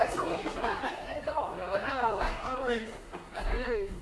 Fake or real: fake